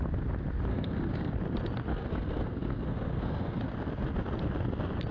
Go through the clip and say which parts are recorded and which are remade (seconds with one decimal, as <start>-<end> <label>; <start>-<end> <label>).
0.0-0.7 recorded; 0.7-1.3 remade; 1.3-1.9 recorded; 1.9-3.7 remade; 3.7-5.1 recorded